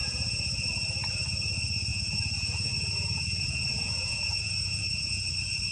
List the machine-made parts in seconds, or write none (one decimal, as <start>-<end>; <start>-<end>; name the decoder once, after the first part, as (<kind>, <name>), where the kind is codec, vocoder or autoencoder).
0.0-0.7 (vocoder, Vocos); 1.9-5.3